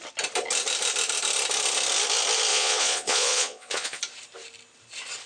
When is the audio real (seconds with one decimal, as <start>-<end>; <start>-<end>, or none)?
0.0-2.5; 4.0-5.3